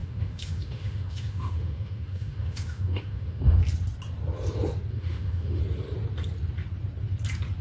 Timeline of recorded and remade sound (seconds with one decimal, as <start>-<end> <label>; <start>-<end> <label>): 0.0-3.6 remade; 3.6-4.9 recorded; 4.9-5.6 remade; 5.6-7.6 recorded